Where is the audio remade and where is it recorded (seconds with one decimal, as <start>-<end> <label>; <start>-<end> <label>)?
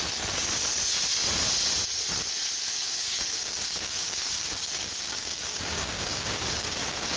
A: 0.0-2.6 recorded; 2.6-7.2 remade